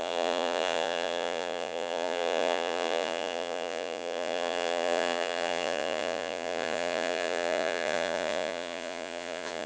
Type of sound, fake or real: fake